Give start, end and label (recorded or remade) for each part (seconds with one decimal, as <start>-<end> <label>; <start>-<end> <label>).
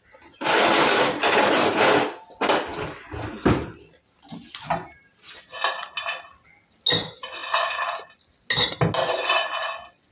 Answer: 0.0-10.1 recorded